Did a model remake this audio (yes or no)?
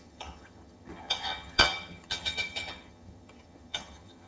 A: yes